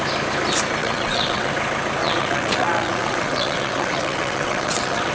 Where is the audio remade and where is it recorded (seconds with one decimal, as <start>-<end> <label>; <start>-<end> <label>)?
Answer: 0.0-0.8 recorded; 0.8-1.5 remade; 1.5-2.0 recorded; 2.0-5.1 remade